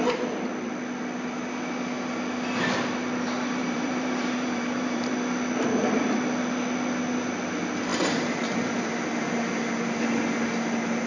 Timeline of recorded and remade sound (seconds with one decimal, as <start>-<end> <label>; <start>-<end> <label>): 0.0-3.6 recorded; 3.6-5.1 remade; 5.1-7.9 recorded; 7.9-8.9 remade; 8.9-11.1 recorded